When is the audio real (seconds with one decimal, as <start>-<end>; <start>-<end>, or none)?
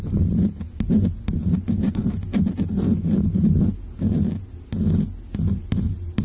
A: 2.0-5.5